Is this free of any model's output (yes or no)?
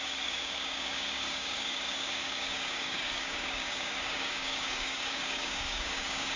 no